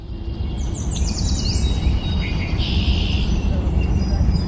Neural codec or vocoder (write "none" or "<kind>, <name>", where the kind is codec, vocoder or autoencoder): vocoder, BigVGAN v2